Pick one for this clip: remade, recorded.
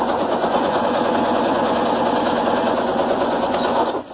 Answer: remade